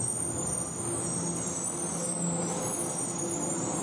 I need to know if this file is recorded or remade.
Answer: recorded